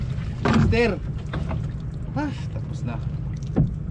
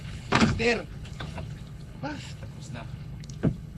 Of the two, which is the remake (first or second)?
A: second